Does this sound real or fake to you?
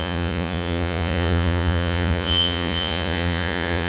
fake